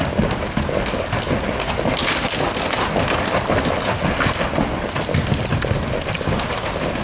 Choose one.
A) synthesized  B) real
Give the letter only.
B